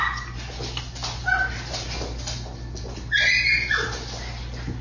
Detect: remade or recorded recorded